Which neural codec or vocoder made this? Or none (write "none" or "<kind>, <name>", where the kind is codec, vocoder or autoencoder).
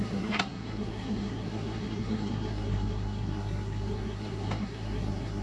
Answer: codec, SNAC